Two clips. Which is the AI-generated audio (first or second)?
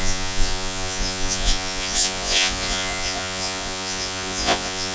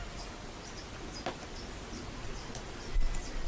first